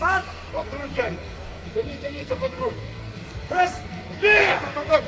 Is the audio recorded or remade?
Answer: remade